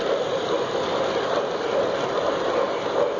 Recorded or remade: recorded